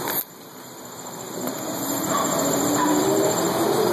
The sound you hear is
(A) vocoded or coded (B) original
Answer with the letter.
A